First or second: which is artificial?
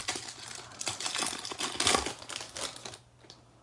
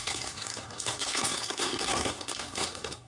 second